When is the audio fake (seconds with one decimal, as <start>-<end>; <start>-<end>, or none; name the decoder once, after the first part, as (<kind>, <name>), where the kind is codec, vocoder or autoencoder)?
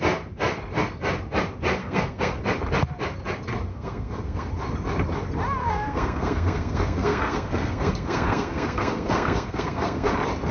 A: 1.8-2.4 (codec, SNAC); 3.7-4.5; 5.6-10.1